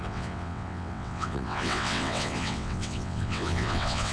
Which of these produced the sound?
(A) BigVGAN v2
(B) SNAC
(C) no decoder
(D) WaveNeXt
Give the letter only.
D